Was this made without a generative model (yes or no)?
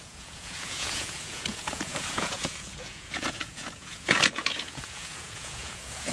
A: no